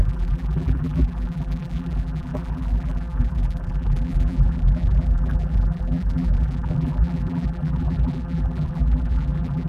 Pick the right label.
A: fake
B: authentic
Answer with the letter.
A